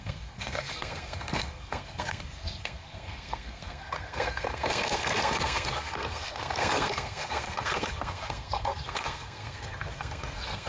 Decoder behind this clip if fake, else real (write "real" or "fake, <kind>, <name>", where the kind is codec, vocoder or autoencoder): fake, codec, SNAC